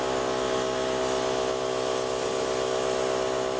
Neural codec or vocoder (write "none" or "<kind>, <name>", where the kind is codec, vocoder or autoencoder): none